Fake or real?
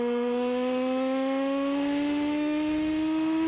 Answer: fake